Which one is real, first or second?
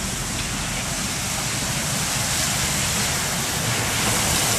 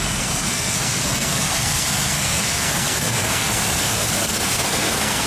first